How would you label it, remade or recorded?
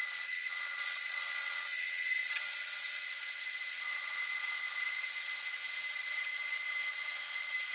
remade